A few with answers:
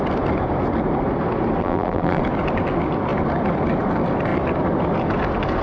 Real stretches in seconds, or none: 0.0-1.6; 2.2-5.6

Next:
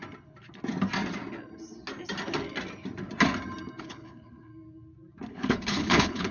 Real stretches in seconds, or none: 0.0-3.8; 4.5-5.3